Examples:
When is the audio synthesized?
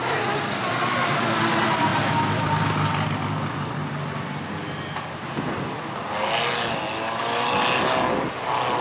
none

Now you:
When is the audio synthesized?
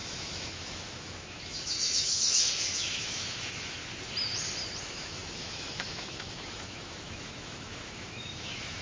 0.0-3.8; 4.8-8.8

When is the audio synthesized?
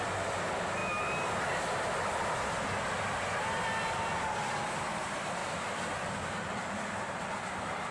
5.4-7.9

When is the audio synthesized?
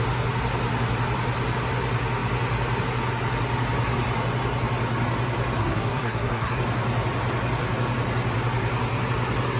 5.6-6.6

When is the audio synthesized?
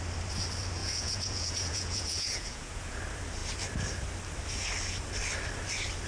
0.8-3.0